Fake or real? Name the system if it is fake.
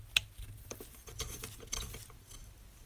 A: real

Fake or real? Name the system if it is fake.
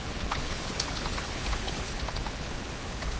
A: fake, codec, HILCodec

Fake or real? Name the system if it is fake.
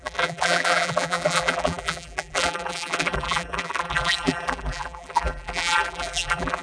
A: fake, vocoder, BigVGAN v2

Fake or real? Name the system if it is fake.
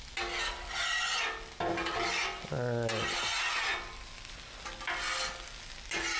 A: real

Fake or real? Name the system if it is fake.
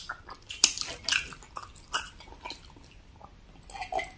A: real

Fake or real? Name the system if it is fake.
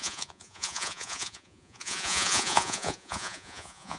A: fake, vocoder, Vocos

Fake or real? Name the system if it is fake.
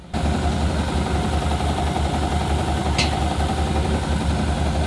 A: real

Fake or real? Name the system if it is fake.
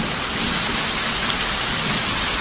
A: real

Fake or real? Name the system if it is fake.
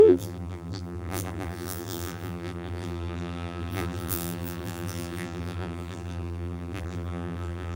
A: fake, vocoder, BigVGAN v2